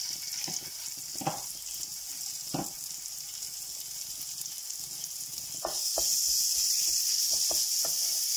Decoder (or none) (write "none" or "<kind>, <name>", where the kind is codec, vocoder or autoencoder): none